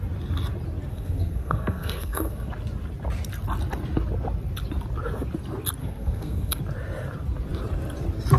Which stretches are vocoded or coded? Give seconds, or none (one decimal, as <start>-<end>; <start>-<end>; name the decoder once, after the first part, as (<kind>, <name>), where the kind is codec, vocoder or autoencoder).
0.9-2.5 (codec, SNAC); 5.8-6.6